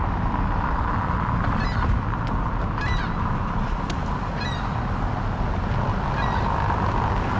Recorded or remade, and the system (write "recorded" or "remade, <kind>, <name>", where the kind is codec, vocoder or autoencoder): recorded